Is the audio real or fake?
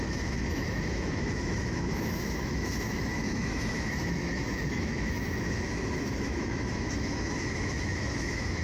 fake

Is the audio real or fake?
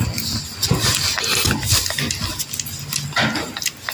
real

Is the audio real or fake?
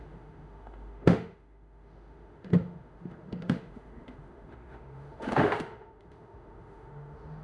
fake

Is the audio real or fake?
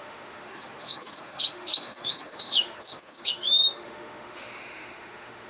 fake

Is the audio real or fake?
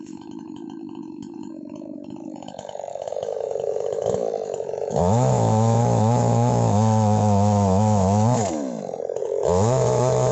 fake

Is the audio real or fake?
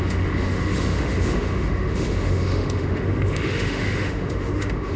fake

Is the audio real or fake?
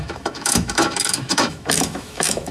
fake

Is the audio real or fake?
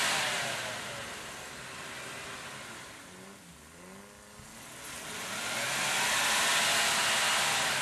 real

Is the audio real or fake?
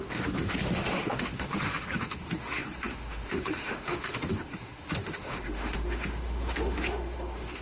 fake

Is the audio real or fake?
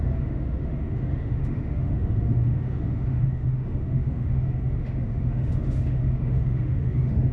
fake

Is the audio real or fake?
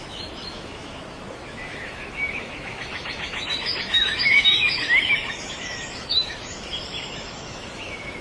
fake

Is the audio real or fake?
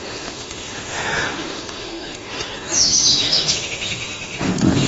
fake